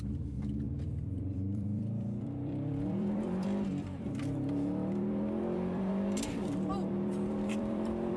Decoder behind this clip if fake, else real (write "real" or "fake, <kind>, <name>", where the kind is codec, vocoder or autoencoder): fake, vocoder, BigVGAN v2